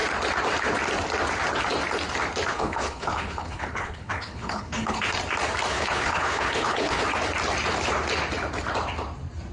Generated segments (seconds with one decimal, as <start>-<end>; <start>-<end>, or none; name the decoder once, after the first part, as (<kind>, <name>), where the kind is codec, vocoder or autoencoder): 2.5-5.0 (codec, HILCodec); 5.7-7.0